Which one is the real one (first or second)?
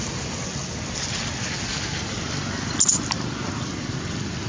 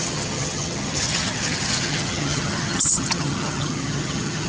first